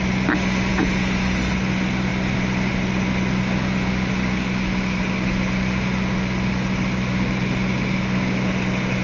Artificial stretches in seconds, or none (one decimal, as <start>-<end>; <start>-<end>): 0.7-1.6